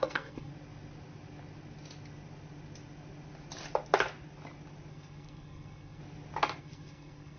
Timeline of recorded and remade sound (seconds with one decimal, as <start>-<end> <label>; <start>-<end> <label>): 0.0-0.5 remade; 0.5-4.9 recorded; 4.9-6.0 remade; 6.0-6.6 recorded; 6.6-7.4 remade